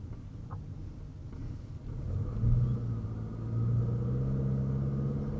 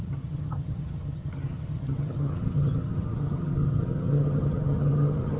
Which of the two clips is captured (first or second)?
first